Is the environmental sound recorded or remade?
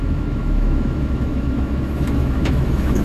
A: remade